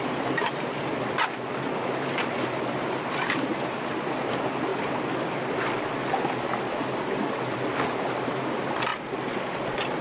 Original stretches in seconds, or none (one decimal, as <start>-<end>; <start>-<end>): 0.0-10.0